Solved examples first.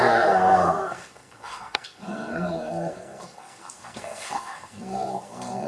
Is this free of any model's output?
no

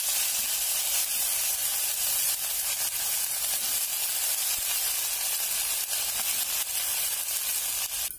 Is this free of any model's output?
yes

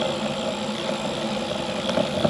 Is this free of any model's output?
yes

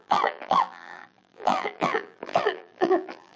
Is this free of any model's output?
no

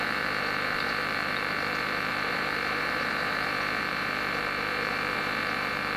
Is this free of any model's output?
no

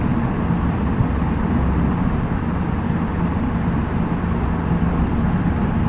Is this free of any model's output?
yes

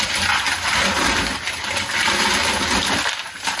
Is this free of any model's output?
yes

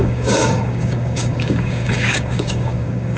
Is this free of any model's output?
no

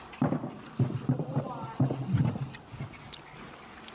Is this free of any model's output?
yes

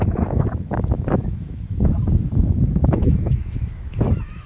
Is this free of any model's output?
no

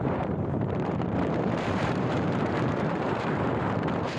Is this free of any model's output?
no